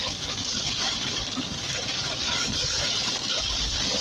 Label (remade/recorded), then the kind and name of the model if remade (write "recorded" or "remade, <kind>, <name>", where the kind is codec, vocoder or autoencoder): remade, codec, DAC